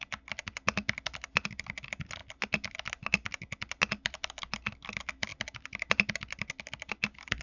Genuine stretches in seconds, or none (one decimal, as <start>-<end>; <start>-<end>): 0.0-7.4